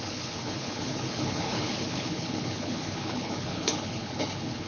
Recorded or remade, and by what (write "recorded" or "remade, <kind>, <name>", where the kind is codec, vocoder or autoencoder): remade, codec, HILCodec